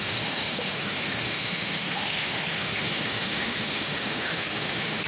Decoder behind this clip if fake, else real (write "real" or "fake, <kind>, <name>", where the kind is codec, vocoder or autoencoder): fake, autoencoder, DAC-VAE